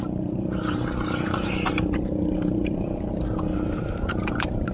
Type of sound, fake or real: fake